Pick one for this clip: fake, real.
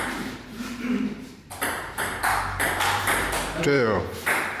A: fake